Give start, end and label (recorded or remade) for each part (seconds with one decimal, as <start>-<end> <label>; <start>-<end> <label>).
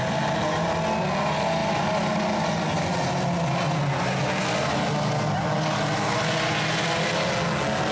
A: 0.0-7.9 recorded